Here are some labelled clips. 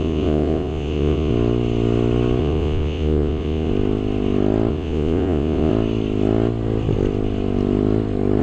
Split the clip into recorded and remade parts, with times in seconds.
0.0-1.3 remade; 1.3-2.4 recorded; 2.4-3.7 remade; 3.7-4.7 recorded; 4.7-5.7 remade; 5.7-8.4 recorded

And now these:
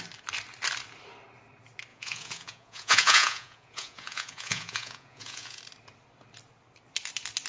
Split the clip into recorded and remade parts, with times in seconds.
0.0-1.9 recorded; 1.9-5.6 remade; 5.6-7.5 recorded